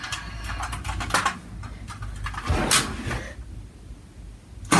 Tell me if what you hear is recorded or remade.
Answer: recorded